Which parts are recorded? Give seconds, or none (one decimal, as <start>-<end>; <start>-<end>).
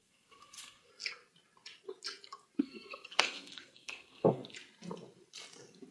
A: 0.9-2.6; 4.4-5.9